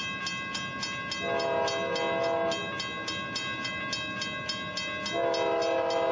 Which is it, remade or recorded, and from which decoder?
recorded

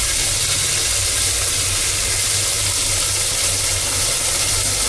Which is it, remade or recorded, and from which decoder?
recorded